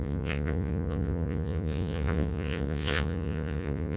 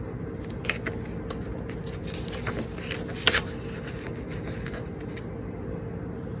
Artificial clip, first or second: first